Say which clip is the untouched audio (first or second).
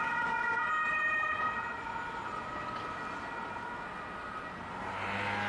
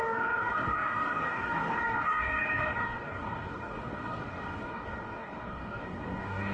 first